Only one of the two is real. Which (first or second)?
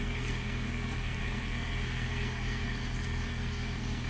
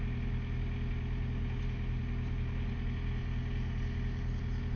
second